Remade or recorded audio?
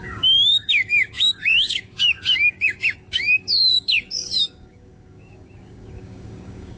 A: remade